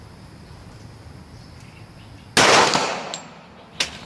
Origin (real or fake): real